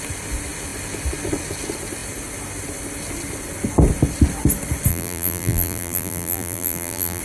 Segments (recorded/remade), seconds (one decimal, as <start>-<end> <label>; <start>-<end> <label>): 0.0-4.9 recorded; 4.9-7.2 remade